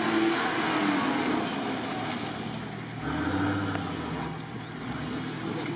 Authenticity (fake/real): real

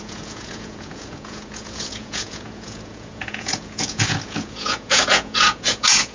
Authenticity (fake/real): fake